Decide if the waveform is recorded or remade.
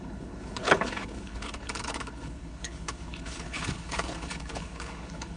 remade